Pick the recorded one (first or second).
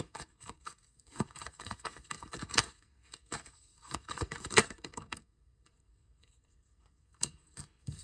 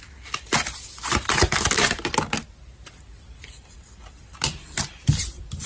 second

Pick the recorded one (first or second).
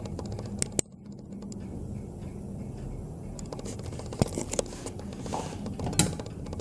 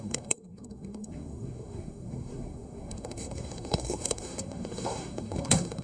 first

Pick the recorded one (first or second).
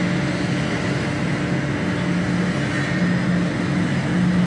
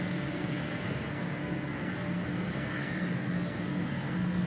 first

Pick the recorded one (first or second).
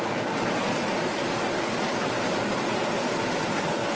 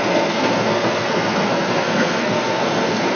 first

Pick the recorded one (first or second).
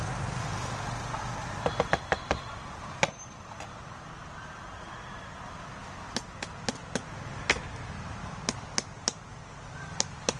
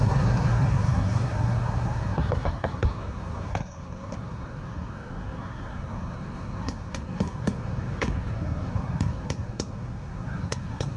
first